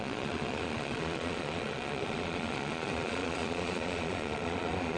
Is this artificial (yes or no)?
yes